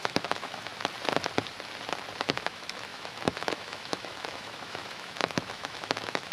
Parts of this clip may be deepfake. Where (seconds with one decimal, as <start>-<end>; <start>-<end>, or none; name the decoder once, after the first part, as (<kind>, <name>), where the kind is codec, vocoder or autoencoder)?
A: 0.0-0.7 (autoencoder, DAC-VAE); 2.2-6.3